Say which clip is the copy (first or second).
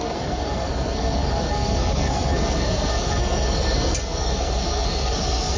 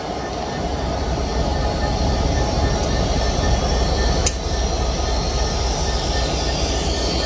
first